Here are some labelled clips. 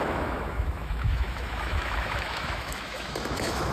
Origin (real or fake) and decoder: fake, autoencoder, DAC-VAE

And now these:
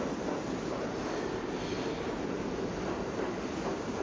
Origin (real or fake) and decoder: real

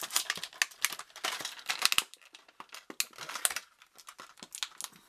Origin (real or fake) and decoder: real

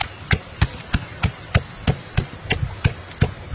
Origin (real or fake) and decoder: real